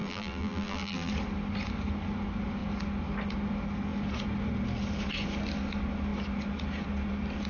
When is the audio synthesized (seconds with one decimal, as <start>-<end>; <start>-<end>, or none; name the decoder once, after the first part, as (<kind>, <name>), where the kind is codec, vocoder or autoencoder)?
0.0-1.1 (vocoder, BigVGAN v2)